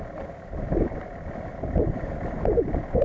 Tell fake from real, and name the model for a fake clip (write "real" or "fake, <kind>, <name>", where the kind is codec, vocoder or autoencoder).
real